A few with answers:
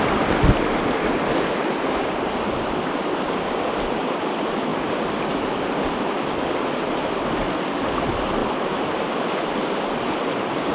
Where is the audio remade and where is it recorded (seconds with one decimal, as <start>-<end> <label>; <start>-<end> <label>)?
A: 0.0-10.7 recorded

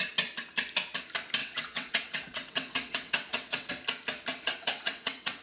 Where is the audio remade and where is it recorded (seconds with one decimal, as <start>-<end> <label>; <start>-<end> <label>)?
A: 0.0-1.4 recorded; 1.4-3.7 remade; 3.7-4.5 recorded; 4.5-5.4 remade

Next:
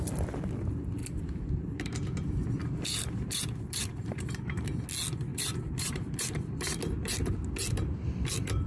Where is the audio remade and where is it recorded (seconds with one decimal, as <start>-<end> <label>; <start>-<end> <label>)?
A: 0.0-1.0 recorded; 1.0-1.9 remade; 1.9-2.6 recorded; 2.6-4.8 remade; 4.8-5.3 recorded; 5.3-6.8 remade; 6.8-8.7 recorded

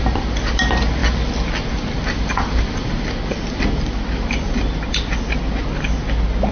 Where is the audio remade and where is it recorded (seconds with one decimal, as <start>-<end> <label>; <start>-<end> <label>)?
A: 0.0-6.5 recorded